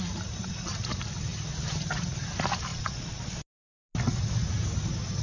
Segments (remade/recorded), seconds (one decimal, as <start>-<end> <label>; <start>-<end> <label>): 0.0-2.7 recorded; 2.7-3.4 remade; 3.4-5.2 recorded